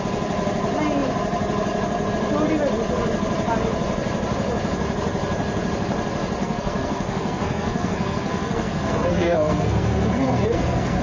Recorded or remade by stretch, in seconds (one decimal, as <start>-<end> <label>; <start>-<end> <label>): 0.0-6.4 recorded; 6.4-11.0 remade